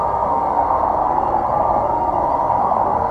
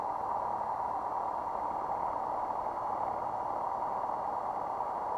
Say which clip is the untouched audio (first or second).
second